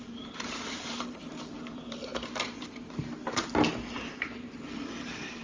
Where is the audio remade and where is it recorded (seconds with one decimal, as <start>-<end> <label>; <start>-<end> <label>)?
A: 0.0-2.1 remade; 2.1-4.1 recorded; 4.1-5.4 remade

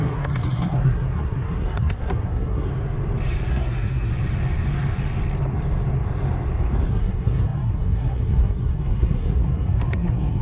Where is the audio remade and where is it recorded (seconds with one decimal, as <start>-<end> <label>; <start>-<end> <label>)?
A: 0.0-2.7 remade; 2.7-3.5 recorded; 3.5-4.1 remade; 4.1-6.9 recorded; 6.9-10.4 remade